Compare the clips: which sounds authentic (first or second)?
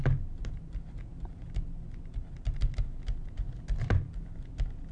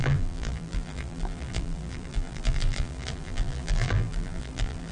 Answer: first